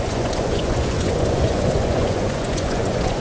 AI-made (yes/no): yes